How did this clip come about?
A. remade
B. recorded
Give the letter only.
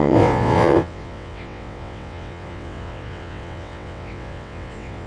A